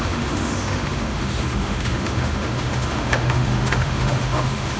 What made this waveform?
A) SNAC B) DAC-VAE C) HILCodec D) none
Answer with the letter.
B